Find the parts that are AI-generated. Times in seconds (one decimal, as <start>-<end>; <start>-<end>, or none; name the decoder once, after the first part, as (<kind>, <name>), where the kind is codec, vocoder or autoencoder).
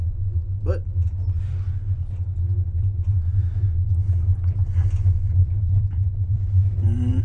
5.4-7.2 (vocoder, BigVGAN v2)